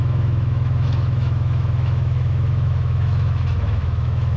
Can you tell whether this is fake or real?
fake